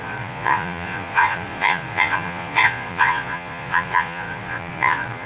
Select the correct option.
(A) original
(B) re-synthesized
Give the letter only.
B